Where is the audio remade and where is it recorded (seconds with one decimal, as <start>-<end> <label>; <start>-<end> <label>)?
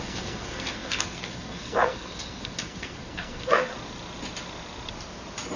0.0-3.7 remade; 3.7-5.6 recorded